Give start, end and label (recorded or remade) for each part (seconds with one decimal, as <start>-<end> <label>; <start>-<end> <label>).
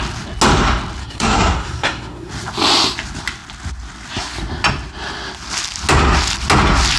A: 0.0-1.0 recorded; 1.0-2.3 remade; 2.3-7.0 recorded